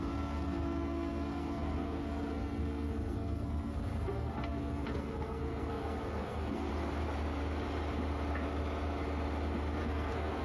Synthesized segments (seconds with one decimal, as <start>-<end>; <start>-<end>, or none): 0.0-6.7; 9.8-10.4